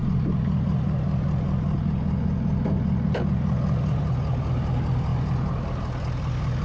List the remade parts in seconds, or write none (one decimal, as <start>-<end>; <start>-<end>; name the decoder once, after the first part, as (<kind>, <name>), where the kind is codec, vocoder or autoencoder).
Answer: none